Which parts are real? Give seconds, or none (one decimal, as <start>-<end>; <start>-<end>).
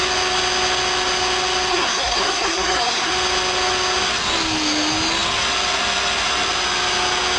0.0-1.7; 3.1-7.4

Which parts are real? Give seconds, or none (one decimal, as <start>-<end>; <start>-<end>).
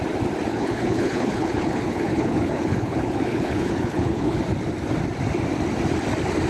0.0-0.5; 4.4-6.5